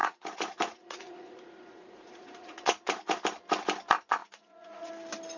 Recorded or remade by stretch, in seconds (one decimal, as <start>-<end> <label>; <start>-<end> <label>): 0.0-3.2 remade; 3.2-4.2 recorded; 4.2-4.9 remade; 4.9-5.4 recorded